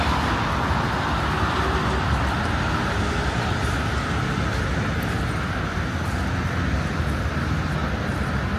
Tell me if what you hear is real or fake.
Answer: real